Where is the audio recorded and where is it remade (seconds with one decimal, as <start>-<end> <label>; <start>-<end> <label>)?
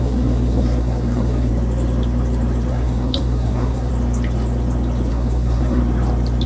0.0-1.5 remade; 1.5-2.7 recorded; 2.7-3.9 remade; 3.9-5.1 recorded; 5.1-5.8 remade; 5.8-6.5 recorded